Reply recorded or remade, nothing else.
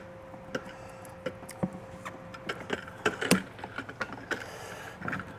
recorded